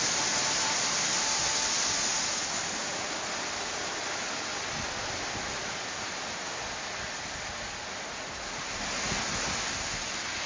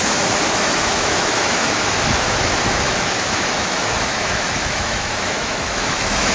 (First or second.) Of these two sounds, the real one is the first